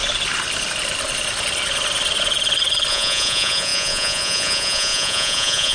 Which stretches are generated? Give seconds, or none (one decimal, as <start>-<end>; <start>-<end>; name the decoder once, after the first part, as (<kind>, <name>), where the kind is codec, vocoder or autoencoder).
2.9-5.7 (vocoder, Vocos)